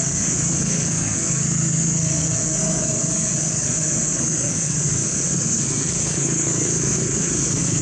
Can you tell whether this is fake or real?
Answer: fake